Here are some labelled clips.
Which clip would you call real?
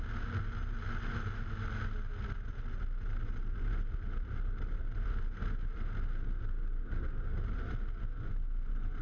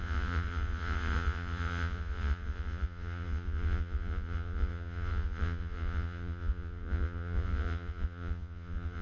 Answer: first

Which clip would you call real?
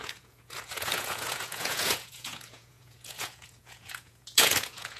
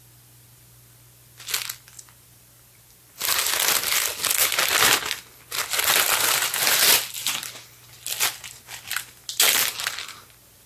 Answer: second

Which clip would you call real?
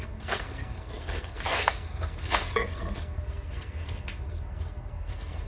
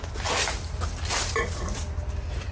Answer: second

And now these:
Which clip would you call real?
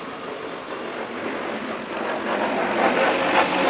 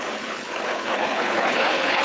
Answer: first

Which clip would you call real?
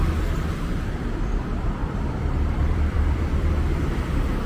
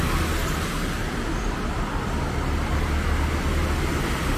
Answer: second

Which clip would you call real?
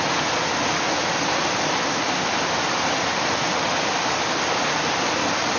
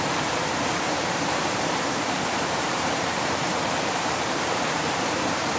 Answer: first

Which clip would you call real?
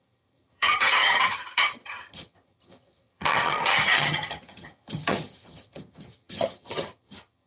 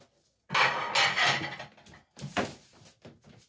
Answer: second